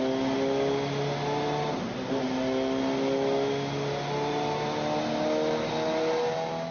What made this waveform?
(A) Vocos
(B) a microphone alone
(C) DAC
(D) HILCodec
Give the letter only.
B